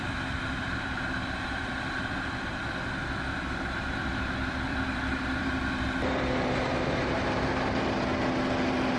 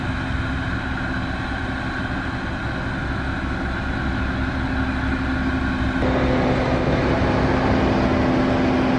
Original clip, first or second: second